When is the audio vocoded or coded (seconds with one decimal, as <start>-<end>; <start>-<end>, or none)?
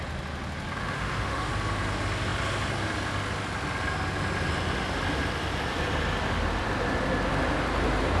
0.8-1.5